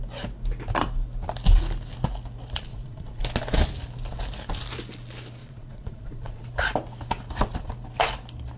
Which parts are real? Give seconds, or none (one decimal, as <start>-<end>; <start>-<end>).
0.0-2.7; 3.2-5.4; 6.4-8.6